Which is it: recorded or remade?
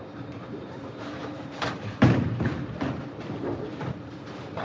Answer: remade